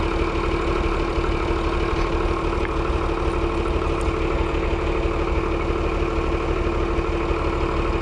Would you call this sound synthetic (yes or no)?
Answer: no